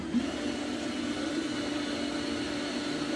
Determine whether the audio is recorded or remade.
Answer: recorded